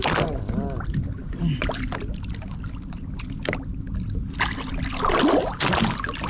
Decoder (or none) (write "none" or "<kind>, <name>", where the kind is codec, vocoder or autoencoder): none